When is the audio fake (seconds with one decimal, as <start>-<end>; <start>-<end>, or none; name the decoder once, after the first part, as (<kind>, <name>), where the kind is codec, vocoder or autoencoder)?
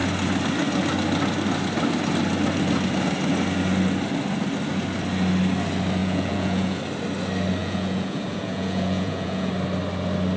6.0-6.8 (vocoder, Vocos); 7.6-9.5